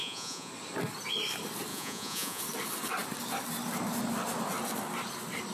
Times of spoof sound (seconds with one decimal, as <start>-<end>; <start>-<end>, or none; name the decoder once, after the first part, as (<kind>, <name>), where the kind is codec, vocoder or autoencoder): 0.0-0.5 (vocoder, Vocos); 1.7-2.4